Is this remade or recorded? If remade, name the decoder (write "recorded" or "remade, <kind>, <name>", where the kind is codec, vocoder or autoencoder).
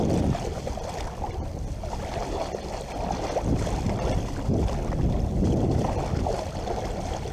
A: recorded